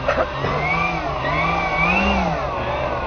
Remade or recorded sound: recorded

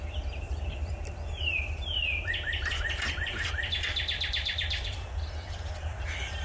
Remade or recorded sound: remade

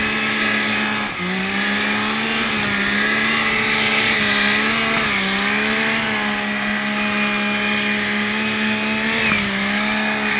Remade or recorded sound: recorded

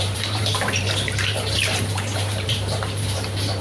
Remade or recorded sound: remade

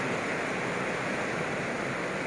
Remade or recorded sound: recorded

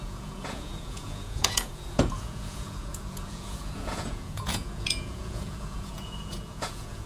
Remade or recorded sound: remade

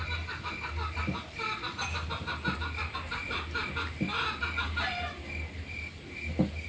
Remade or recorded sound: recorded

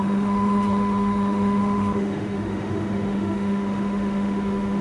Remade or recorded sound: remade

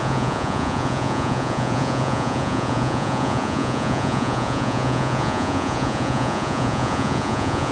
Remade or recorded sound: remade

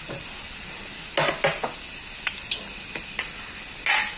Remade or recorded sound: recorded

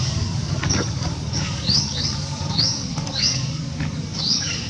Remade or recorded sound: remade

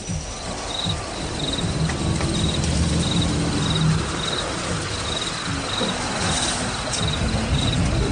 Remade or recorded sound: recorded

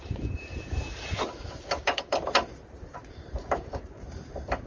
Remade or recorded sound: remade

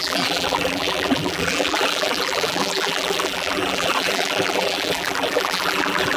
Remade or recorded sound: remade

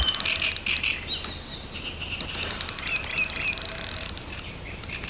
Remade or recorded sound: recorded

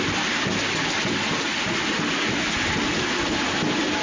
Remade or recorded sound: recorded